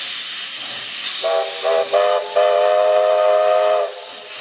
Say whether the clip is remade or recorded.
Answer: recorded